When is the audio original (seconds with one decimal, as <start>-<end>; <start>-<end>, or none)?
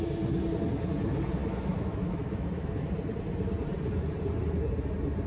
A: 0.0-1.4; 2.9-5.3